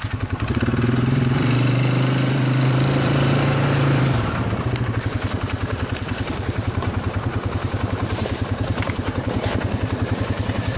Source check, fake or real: fake